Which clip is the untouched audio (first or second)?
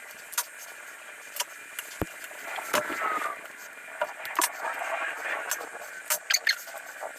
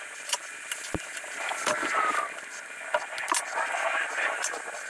first